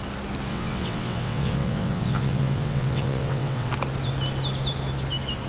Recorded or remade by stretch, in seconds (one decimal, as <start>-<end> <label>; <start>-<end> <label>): 0.0-0.5 recorded; 0.5-3.7 remade; 3.7-5.5 recorded